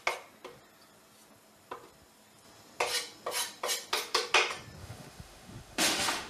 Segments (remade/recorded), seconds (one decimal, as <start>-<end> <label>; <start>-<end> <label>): 0.0-4.8 recorded; 4.8-6.3 remade